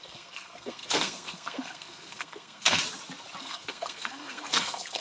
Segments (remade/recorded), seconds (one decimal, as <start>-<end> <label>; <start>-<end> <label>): 0.0-2.8 remade; 2.8-3.4 recorded; 3.4-5.0 remade